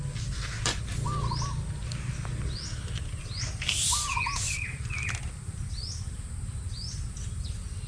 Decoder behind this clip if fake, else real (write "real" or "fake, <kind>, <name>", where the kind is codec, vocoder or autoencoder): real